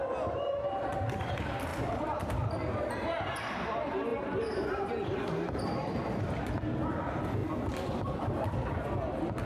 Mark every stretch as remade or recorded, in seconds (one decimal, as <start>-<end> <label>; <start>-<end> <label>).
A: 0.0-4.1 recorded; 4.1-6.4 remade; 6.4-9.5 recorded